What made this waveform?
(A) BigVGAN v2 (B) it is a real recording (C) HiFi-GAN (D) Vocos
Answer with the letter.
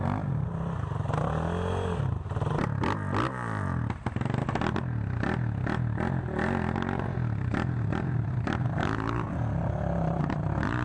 B